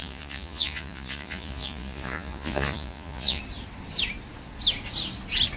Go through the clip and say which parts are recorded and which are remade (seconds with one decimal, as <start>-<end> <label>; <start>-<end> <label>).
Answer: 0.0-3.4 remade; 3.4-5.6 recorded